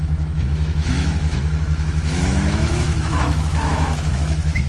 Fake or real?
fake